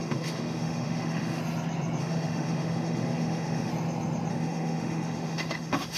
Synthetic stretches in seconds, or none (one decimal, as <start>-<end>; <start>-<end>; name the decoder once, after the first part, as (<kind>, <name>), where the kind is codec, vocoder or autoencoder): 0.0-1.4 (autoencoder, DAC-VAE); 2.0-3.7; 4.3-6.0